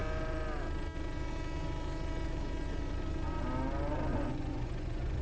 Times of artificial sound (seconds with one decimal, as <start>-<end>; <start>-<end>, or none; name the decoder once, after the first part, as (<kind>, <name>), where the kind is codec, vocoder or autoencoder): 4.1-5.2 (vocoder, Vocos)